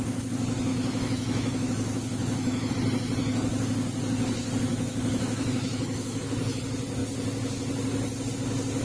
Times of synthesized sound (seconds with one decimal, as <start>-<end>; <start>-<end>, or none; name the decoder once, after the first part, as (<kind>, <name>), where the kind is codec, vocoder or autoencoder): 0.7-2.7 (autoencoder, DAC-VAE); 4.7-6.6